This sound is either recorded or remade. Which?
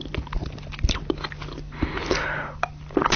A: recorded